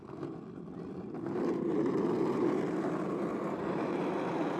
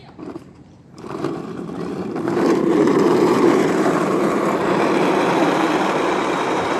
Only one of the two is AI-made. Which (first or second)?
second